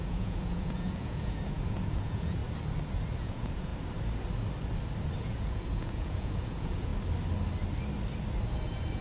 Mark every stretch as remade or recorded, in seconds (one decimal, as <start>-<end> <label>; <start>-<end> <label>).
0.0-2.4 remade; 2.4-3.2 recorded; 3.2-3.7 remade; 3.7-5.2 recorded; 5.2-6.9 remade; 6.9-9.0 recorded